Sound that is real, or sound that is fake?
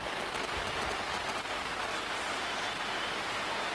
real